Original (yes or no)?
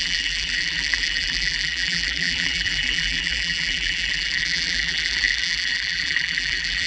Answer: no